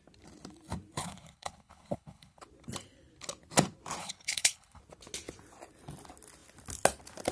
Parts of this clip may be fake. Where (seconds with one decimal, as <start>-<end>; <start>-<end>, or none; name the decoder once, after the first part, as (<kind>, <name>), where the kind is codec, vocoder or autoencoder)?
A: 1.0-2.4 (codec, HILCodec); 4.0-4.8